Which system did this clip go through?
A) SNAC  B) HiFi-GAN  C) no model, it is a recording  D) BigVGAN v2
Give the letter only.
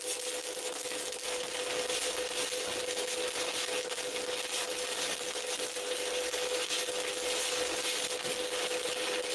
C